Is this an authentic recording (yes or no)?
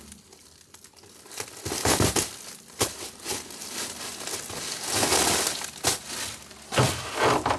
yes